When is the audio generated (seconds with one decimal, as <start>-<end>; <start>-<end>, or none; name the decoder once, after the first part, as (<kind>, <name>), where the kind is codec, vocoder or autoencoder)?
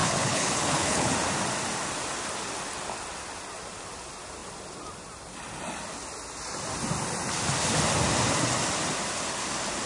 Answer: 0.0-1.1 (codec, HILCodec)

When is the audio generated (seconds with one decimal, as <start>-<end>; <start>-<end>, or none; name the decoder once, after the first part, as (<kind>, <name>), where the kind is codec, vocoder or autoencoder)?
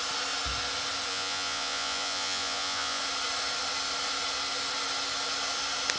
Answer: 1.1-3.0 (vocoder, Vocos)